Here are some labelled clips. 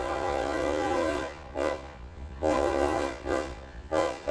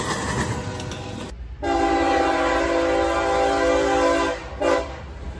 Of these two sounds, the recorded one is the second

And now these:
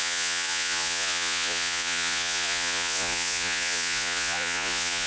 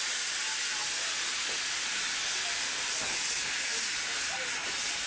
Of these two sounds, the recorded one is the second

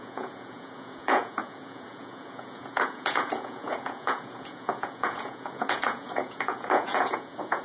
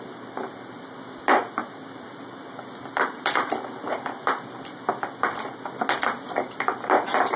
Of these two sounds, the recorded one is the second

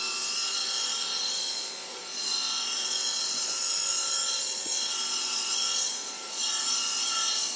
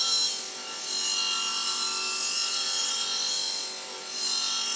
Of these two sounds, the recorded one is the second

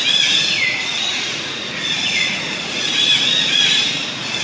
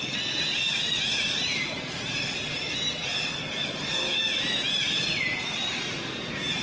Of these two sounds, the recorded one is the second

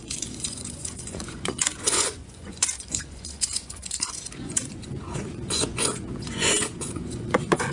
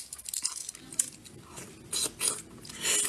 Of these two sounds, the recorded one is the second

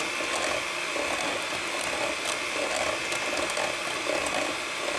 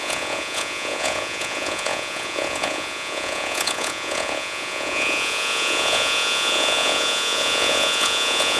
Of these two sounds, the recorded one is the first